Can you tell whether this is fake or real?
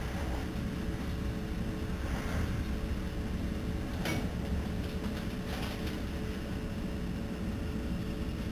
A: real